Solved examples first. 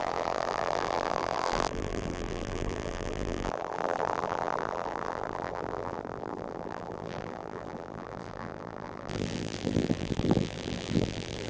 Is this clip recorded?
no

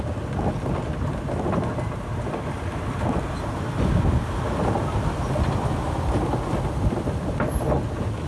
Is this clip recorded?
yes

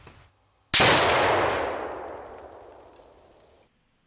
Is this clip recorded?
yes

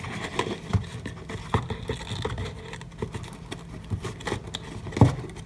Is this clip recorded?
yes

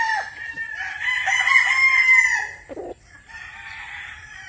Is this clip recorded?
no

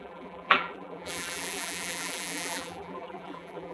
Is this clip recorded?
no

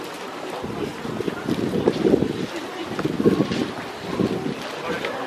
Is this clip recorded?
yes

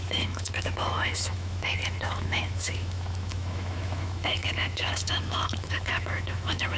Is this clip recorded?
no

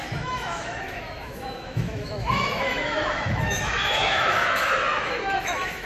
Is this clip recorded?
no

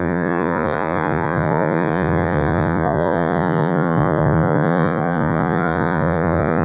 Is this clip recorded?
no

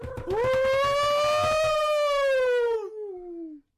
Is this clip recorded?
yes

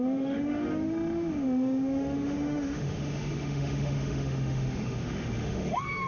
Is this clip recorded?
no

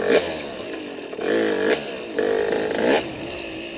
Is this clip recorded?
yes